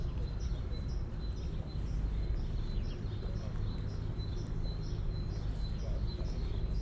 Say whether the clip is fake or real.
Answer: real